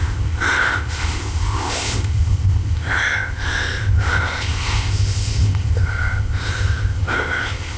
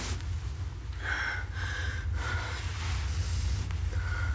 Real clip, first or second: second